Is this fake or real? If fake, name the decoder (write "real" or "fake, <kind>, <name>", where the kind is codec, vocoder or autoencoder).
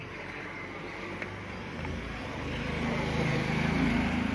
real